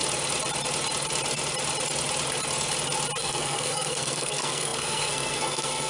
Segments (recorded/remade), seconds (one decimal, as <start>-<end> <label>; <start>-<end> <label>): 0.0-3.2 recorded; 3.2-5.9 remade